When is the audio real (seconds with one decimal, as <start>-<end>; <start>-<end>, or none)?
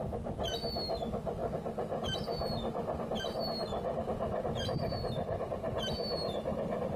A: 0.0-7.0